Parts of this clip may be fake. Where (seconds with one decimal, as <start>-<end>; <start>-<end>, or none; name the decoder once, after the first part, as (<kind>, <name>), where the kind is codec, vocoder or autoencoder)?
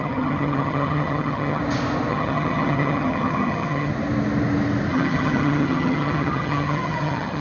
0.0-1.6 (vocoder, HiFi-GAN); 2.1-3.9; 4.9-7.4